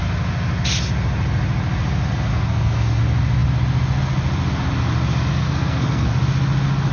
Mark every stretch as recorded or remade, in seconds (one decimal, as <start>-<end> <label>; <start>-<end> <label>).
0.0-2.3 recorded; 2.3-3.0 remade; 3.0-5.3 recorded; 5.3-6.1 remade; 6.1-6.9 recorded